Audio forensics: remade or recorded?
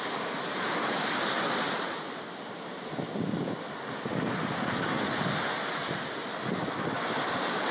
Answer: recorded